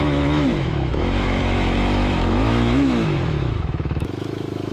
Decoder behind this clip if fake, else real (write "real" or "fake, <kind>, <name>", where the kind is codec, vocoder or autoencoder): fake, autoencoder, DAC-VAE